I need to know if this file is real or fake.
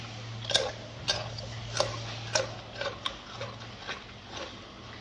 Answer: real